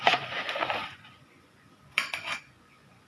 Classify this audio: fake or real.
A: fake